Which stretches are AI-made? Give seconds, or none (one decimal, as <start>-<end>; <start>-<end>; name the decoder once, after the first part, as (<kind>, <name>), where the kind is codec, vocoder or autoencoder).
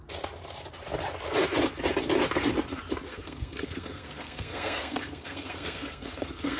3.1-6.6 (codec, SNAC)